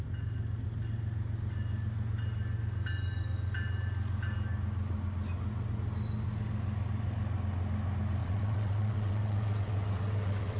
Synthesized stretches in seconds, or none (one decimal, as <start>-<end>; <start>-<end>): 8.2-10.6

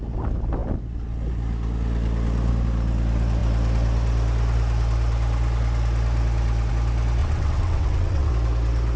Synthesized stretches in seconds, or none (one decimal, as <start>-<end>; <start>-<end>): 7.2-8.3

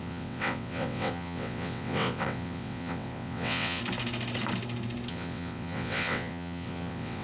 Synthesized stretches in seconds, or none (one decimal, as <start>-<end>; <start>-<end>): 0.0-3.8; 5.1-7.2

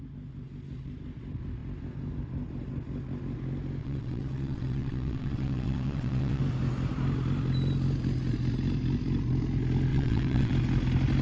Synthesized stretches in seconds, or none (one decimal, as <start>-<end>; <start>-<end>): 3.8-6.4; 9.9-10.5

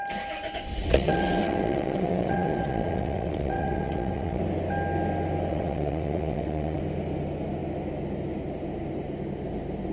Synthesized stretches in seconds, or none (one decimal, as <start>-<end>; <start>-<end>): 0.8-4.4; 5.5-6.8

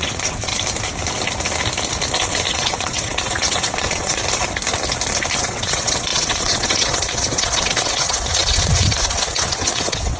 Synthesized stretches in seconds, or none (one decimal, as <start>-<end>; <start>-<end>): 0.0-0.5; 2.5-4.2; 5.4-10.2